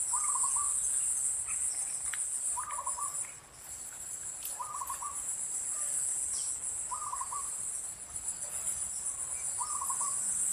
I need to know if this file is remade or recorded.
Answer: recorded